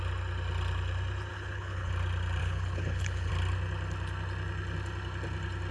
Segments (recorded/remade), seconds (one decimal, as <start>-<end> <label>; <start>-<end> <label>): 0.0-1.3 recorded; 1.3-1.9 remade; 1.9-2.4 recorded; 2.4-3.3 remade; 3.3-5.7 recorded